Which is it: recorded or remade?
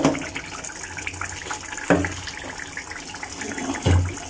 recorded